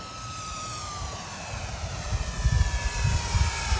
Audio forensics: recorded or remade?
remade